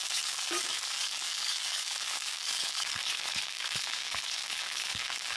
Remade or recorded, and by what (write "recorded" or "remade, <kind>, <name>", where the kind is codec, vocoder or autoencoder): remade, codec, DAC